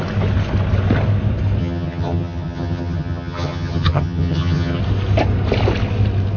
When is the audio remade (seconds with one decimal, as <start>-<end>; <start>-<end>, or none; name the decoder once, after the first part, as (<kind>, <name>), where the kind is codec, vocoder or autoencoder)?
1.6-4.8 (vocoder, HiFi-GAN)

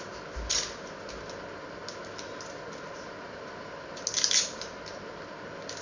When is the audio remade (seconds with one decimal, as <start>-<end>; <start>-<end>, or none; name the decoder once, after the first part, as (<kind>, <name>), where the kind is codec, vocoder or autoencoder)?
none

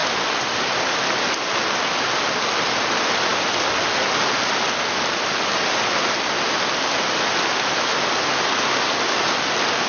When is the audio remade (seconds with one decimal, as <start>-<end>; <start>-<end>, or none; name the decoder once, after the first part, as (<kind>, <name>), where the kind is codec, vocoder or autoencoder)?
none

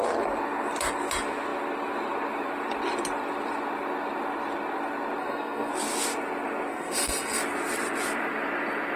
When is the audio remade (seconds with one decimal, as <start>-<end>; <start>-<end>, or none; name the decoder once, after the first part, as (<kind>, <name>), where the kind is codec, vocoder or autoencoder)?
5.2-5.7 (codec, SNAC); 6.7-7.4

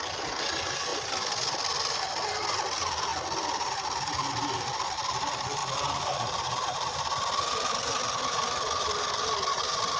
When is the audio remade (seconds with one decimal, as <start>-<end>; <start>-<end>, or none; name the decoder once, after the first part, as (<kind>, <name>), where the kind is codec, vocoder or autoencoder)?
none